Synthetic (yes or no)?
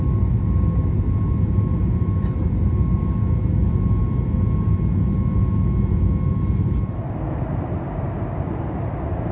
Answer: no